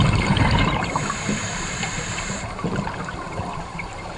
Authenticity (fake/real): fake